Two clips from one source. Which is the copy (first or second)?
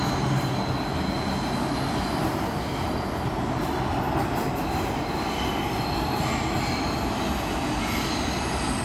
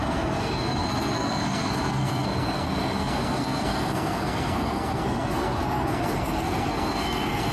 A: second